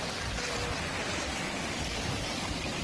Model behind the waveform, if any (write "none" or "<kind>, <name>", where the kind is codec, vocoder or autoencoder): none